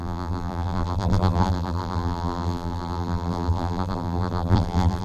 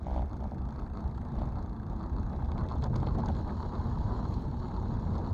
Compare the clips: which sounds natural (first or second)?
second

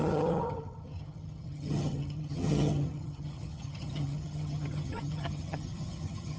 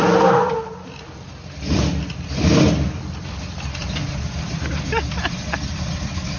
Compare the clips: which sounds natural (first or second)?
second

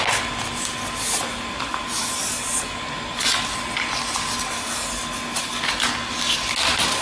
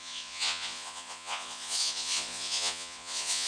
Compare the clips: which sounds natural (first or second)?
first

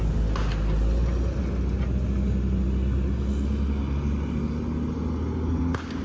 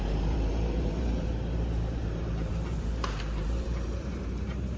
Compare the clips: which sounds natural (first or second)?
first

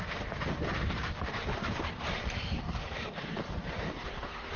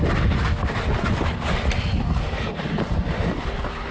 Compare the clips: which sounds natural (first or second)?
second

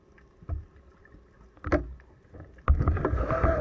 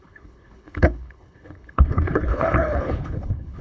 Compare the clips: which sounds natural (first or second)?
first